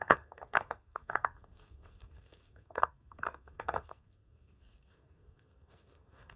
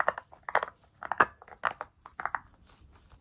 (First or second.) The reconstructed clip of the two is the first